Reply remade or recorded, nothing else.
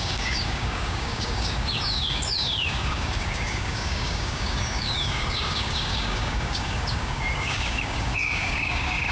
remade